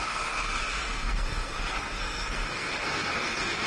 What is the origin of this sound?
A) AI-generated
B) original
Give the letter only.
A